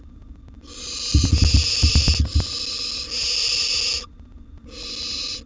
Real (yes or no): yes